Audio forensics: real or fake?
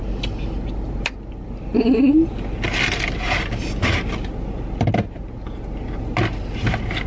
real